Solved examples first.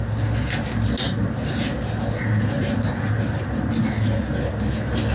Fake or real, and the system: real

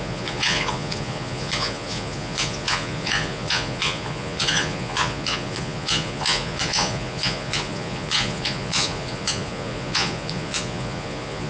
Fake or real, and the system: fake, vocoder, Vocos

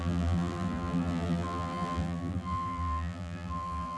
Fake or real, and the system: fake, vocoder, BigVGAN v2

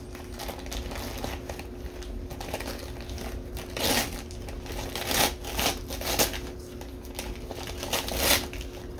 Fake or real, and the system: real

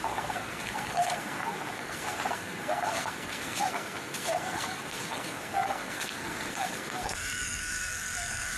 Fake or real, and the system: fake, codec, SNAC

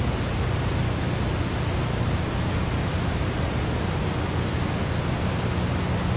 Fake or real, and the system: real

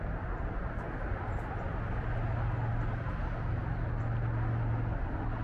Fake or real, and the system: real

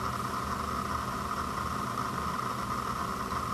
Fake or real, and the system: real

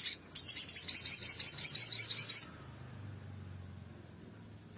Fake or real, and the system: real